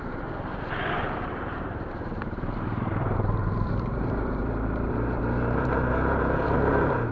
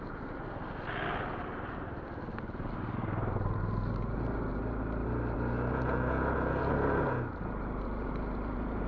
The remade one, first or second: first